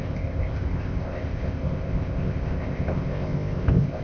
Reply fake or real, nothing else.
fake